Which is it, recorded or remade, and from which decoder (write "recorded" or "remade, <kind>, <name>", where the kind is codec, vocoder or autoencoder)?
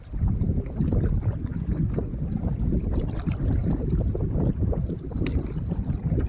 recorded